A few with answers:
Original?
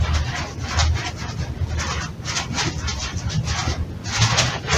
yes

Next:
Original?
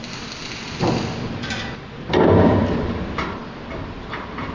no